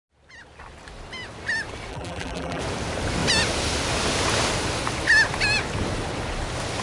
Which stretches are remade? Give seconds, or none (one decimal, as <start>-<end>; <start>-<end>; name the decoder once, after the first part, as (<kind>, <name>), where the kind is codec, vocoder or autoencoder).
1.9-2.6 (vocoder, BigVGAN v2)